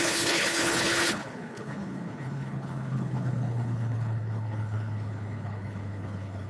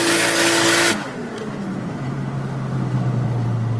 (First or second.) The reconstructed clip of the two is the first